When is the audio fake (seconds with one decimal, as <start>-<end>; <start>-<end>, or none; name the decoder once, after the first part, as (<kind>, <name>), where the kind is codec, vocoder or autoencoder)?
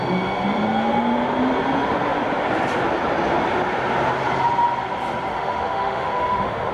5.3-6.7 (autoencoder, DAC-VAE)